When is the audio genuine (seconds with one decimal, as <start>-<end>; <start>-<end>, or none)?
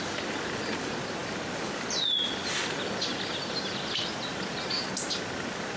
0.0-5.8